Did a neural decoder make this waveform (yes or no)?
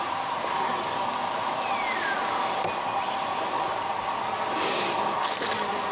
no